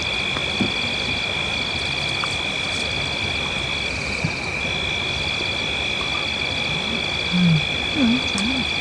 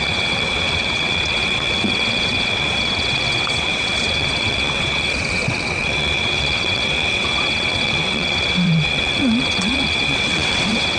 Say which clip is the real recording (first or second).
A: first